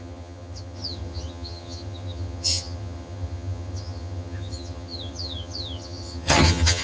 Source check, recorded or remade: remade